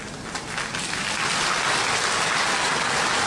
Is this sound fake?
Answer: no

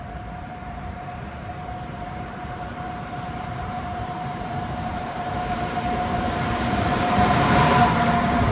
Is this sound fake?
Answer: yes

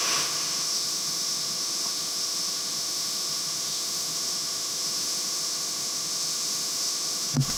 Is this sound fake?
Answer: yes